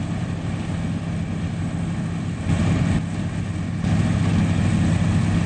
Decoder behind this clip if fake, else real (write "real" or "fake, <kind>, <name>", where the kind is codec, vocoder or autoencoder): real